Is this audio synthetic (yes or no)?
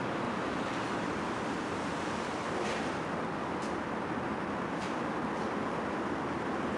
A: no